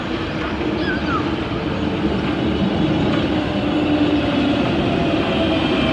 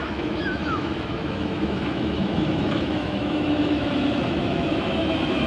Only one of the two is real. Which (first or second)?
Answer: first